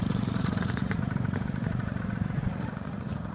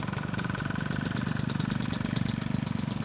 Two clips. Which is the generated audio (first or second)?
first